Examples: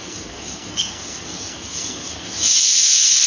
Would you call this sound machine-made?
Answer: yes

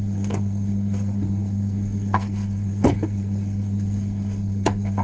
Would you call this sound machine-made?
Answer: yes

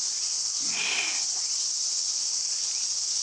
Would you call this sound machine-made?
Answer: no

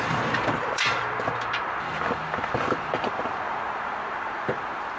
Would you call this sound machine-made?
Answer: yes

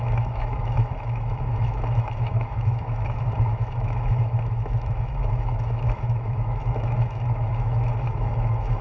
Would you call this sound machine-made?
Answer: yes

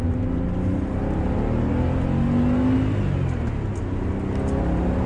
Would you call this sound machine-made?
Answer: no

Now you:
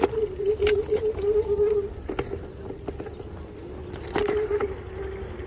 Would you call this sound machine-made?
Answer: no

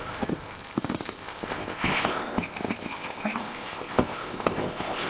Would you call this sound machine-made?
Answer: yes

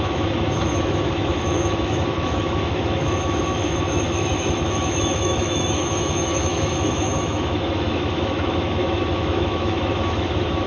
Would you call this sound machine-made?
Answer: yes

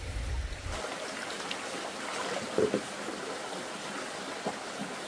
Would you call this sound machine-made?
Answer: no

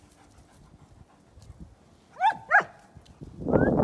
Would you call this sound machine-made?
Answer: no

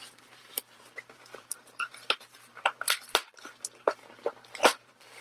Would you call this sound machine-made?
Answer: yes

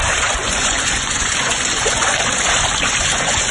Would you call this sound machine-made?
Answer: yes